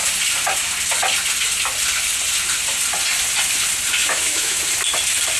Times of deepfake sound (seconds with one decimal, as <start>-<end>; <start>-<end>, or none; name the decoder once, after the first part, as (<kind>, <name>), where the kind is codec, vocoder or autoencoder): 4.0-4.6 (autoencoder, DAC-VAE)